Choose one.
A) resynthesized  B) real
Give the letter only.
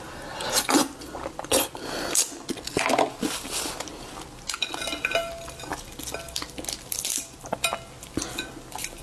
B